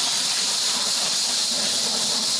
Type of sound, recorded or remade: recorded